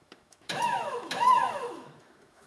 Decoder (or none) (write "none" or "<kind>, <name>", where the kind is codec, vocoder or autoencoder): autoencoder, DAC-VAE